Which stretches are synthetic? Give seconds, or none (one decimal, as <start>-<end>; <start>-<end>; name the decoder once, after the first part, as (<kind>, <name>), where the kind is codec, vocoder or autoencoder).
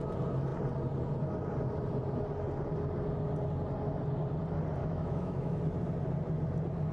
4.8-5.6 (autoencoder, DAC-VAE)